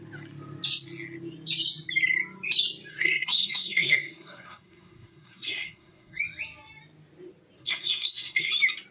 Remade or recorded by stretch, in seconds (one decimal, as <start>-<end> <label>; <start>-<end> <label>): 0.0-2.9 recorded; 2.9-6.2 remade; 6.2-7.6 recorded; 7.6-8.5 remade; 8.5-8.9 recorded